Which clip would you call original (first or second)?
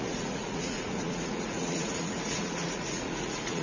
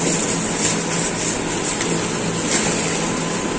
second